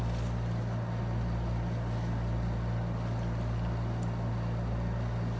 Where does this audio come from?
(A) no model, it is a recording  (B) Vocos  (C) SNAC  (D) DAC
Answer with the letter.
A